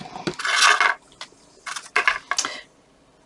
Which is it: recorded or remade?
recorded